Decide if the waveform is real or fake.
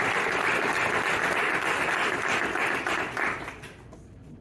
real